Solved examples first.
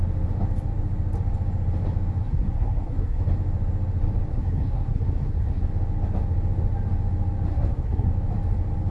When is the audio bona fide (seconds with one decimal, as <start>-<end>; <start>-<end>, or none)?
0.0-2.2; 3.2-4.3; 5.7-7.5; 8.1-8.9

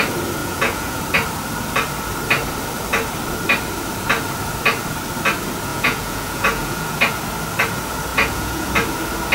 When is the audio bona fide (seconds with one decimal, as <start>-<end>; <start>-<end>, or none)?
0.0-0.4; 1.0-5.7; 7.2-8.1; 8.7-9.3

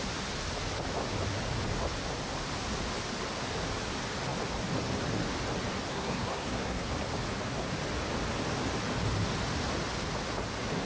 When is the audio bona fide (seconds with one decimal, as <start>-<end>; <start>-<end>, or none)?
0.0-5.9; 6.9-10.9

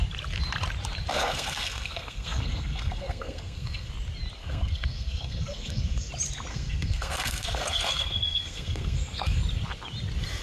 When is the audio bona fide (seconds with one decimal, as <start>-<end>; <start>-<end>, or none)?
0.0-1.1; 3.9-4.4; 6.1-6.5; 9.4-10.4

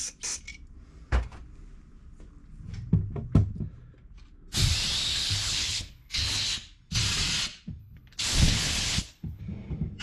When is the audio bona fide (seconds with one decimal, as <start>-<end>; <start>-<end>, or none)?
0.0-5.1; 6.2-7.8; 9.4-10.0

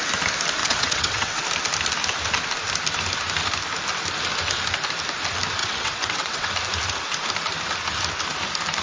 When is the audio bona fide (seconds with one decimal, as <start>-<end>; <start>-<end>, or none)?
0.0-0.6; 1.4-5.6; 6.5-8.8